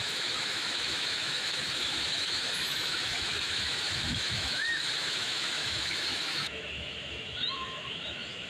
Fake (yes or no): yes